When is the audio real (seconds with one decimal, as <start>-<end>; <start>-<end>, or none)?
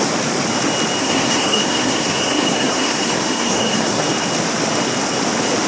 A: 0.0-1.0; 4.0-5.7